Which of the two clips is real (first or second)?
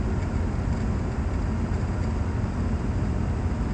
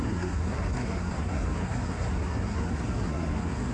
first